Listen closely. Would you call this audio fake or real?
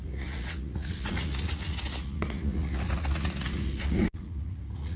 fake